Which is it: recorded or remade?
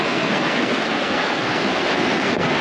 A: remade